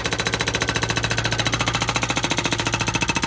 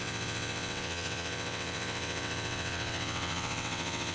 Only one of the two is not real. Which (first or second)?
second